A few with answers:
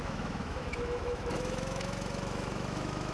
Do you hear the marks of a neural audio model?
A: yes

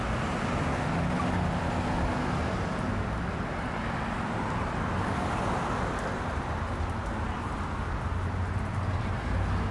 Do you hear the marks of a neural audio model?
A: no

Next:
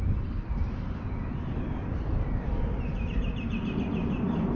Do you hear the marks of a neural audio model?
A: no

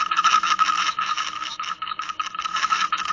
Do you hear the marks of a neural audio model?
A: yes